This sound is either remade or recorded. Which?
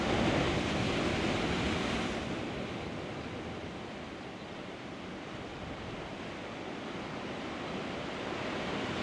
recorded